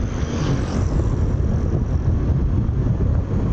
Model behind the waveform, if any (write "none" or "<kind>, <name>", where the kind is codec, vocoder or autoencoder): none